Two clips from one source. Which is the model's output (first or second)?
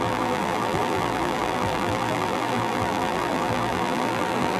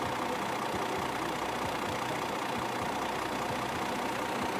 first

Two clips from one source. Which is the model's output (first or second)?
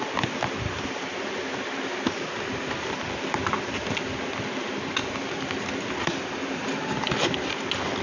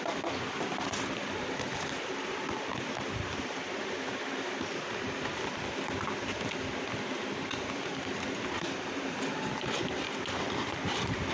second